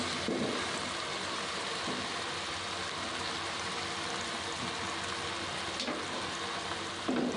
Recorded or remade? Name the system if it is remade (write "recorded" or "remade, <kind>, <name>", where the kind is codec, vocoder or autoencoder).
recorded